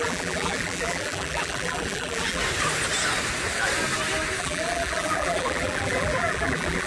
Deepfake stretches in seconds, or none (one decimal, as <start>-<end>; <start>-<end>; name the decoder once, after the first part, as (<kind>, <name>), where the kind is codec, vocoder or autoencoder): 0.0-2.4 (vocoder, BigVGAN v2); 4.4-6.9